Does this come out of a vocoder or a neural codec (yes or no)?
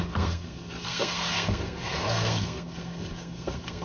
yes